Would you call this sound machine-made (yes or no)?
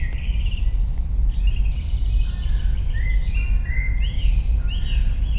no